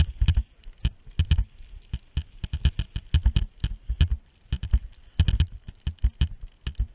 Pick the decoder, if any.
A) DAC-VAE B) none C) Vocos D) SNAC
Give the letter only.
B